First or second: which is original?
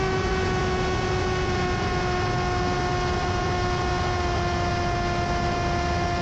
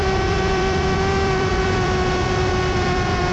first